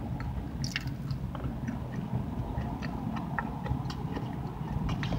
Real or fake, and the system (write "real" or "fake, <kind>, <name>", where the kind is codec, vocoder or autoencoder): real